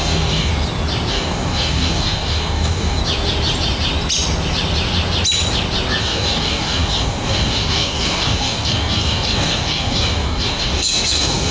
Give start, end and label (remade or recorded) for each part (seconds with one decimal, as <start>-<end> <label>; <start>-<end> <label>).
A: 0.0-0.5 remade; 0.5-1.1 recorded; 1.1-3.0 remade; 3.0-6.0 recorded; 6.0-11.5 remade